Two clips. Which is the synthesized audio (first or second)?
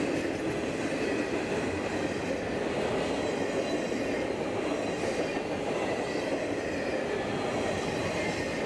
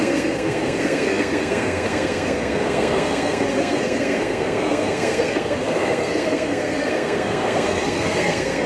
second